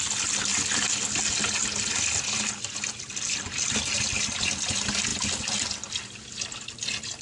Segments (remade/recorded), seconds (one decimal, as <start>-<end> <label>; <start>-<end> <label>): 0.0-7.2 recorded